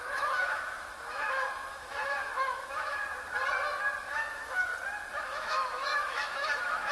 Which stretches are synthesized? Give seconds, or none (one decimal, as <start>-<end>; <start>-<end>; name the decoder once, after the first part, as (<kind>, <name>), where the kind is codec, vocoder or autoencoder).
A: 0.0-3.0 (autoencoder, DAC-VAE); 4.0-4.7; 5.2-6.9